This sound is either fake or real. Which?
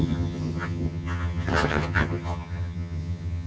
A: fake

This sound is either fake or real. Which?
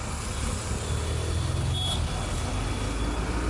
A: real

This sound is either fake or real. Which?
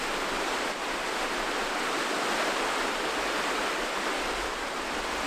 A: real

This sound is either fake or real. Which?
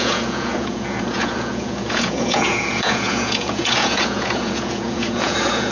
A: fake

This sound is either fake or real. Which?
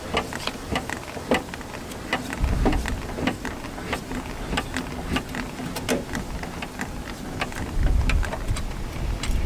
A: real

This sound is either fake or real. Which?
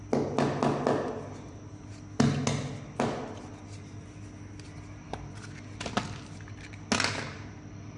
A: real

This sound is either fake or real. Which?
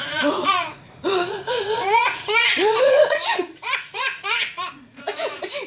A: fake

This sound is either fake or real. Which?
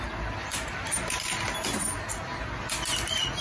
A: real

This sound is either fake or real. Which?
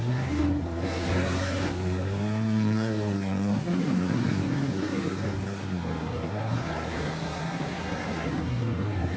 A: fake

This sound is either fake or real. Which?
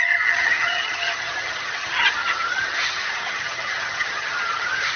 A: fake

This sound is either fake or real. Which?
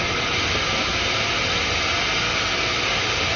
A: real